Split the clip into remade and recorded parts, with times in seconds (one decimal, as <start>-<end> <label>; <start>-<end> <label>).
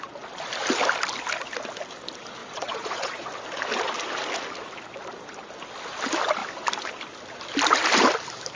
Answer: 0.0-2.4 recorded; 2.4-3.3 remade; 3.3-8.6 recorded